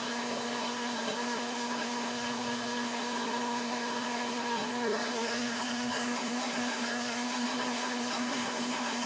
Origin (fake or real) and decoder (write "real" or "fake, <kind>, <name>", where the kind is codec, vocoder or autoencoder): fake, codec, SNAC